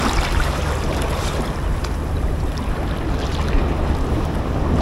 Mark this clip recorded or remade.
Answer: recorded